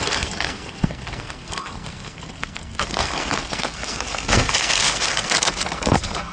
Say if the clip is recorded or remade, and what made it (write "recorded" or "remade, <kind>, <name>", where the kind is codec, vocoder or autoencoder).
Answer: remade, codec, SNAC